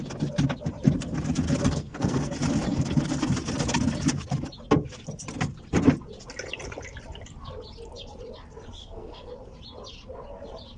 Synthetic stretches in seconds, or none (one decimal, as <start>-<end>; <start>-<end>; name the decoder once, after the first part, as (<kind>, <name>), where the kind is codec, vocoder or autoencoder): 1.6-2.3 (codec, SNAC); 8.8-9.3